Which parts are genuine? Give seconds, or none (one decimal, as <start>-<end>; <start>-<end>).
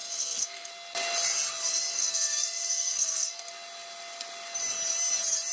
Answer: 0.7-1.9; 3.5-5.5